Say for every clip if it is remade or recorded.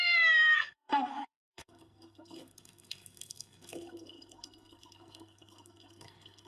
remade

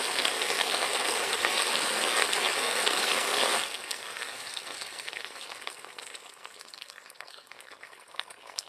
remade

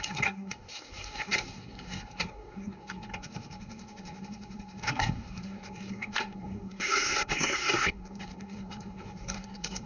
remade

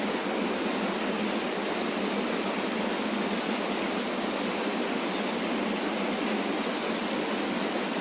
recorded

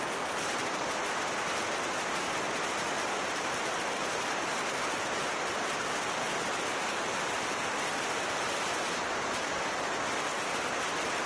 recorded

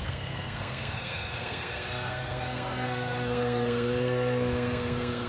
remade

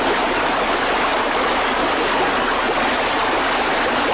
recorded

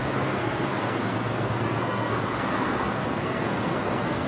remade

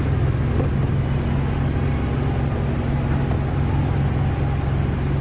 recorded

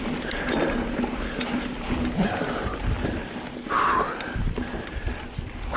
recorded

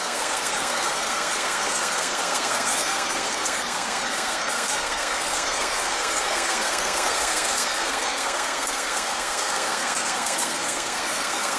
remade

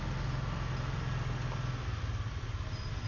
recorded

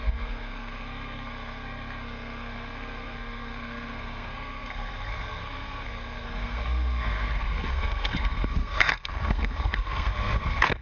remade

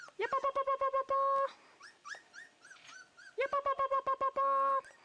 recorded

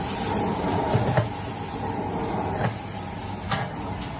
recorded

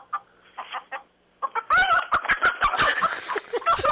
recorded